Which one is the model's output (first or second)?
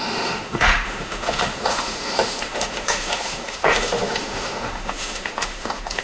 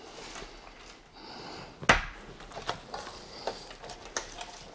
first